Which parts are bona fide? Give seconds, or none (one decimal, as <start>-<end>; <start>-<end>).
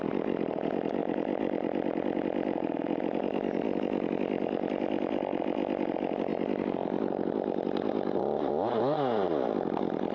0.0-10.1